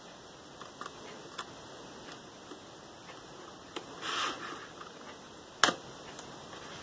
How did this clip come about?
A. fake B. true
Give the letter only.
B